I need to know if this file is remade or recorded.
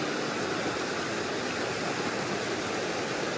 recorded